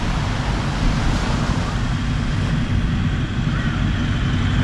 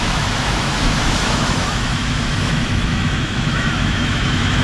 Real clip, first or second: first